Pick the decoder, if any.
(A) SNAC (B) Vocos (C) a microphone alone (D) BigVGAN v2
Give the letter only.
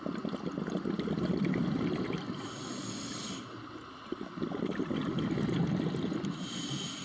C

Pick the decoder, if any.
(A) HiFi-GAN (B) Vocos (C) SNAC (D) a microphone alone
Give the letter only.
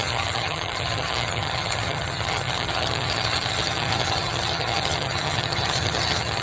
A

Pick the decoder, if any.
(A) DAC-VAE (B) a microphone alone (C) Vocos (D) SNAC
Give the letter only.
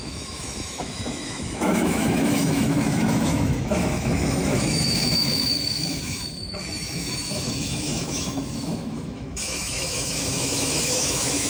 A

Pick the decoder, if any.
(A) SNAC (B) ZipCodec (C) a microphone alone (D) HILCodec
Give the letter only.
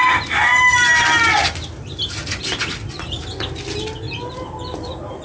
C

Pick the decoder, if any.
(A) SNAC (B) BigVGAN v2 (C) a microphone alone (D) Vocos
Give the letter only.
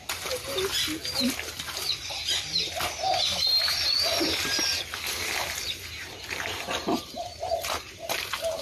C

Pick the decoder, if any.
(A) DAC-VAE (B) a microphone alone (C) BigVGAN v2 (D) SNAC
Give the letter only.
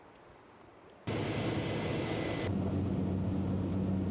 B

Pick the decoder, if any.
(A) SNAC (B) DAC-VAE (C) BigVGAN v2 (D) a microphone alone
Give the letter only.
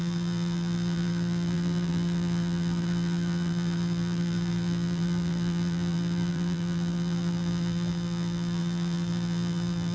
C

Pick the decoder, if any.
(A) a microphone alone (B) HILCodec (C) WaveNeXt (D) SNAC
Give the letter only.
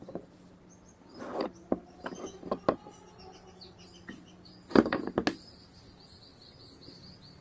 A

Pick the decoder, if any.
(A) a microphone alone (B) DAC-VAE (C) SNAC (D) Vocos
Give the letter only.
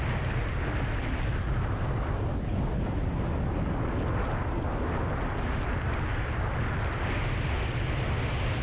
A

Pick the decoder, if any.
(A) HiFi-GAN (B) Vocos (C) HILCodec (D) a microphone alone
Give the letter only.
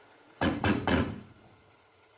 B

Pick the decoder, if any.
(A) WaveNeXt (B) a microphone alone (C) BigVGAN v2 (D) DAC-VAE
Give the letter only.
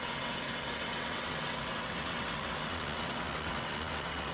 A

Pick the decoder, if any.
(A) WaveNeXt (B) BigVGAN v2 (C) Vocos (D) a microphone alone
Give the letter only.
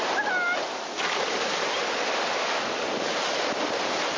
D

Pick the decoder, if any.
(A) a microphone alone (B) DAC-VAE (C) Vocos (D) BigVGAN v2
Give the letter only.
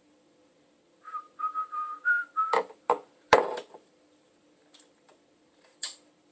D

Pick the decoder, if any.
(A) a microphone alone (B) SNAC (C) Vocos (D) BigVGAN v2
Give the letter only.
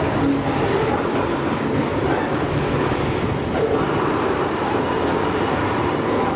A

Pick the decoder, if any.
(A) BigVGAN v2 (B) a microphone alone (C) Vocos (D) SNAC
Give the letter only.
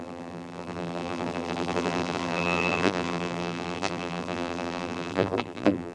A